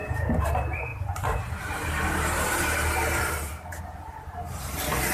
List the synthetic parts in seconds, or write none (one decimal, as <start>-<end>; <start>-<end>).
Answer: 0.0-0.5; 0.9-3.8